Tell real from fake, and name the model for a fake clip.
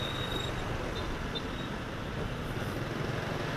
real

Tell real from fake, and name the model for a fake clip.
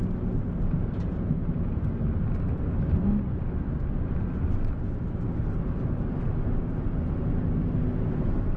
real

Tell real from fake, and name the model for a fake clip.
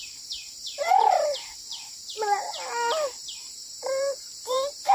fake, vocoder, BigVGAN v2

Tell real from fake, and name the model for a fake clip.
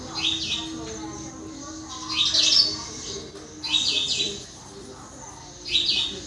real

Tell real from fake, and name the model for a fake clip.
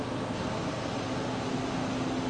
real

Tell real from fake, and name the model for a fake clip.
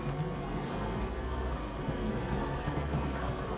fake, codec, SNAC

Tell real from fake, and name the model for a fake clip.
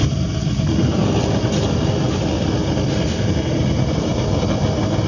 real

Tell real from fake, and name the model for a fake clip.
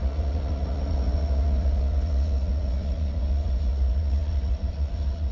fake, vocoder, Vocos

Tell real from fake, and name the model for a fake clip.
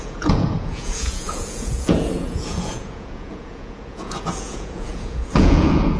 fake, vocoder, Vocos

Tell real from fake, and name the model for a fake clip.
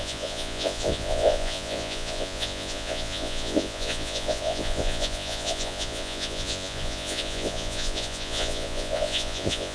fake, vocoder, Vocos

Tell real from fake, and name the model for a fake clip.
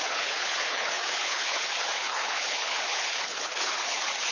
fake, codec, HILCodec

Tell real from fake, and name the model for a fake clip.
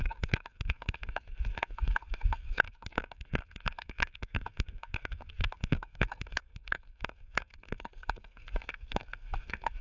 fake, codec, SNAC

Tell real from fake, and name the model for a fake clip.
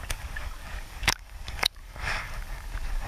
fake, codec, DAC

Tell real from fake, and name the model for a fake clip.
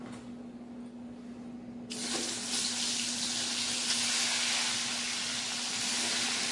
real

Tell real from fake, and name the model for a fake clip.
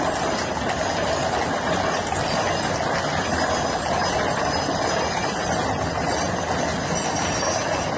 real